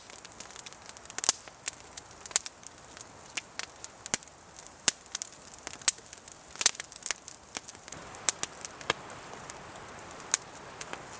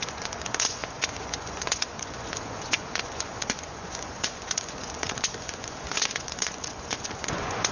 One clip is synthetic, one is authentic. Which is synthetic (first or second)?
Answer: second